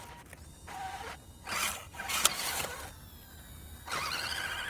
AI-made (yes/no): no